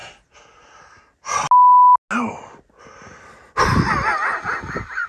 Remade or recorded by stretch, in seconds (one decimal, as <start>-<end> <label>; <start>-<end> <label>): 0.0-5.1 recorded